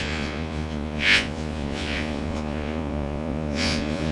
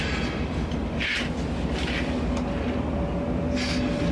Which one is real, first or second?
second